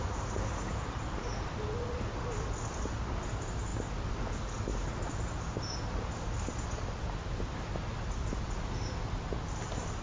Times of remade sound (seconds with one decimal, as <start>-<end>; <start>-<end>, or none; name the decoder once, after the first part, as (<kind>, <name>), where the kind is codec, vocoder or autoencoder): none